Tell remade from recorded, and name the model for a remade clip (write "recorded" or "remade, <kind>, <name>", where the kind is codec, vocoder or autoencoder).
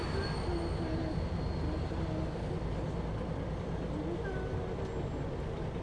recorded